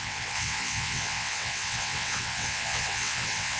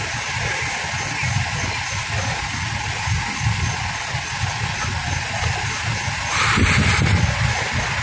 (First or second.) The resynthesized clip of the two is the first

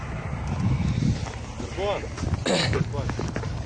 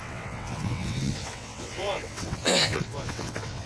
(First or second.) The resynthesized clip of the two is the second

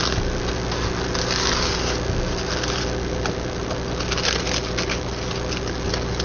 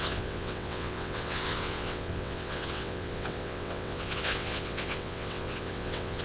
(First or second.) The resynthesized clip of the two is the second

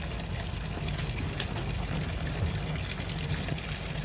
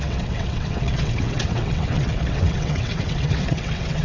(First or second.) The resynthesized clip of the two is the second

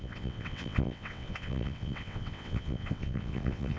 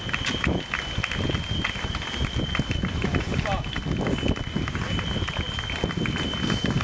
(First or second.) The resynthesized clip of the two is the first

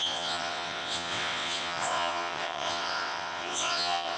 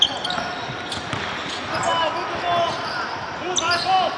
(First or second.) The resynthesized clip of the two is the first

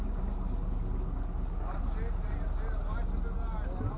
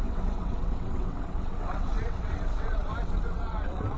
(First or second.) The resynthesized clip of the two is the second